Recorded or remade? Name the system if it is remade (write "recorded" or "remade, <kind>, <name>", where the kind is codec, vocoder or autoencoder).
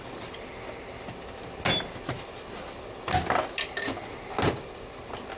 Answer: recorded